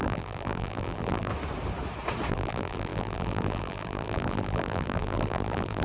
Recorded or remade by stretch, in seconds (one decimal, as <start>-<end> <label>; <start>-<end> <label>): 0.0-1.3 remade; 1.3-2.3 recorded; 2.3-5.8 remade